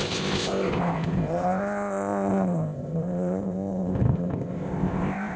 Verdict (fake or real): fake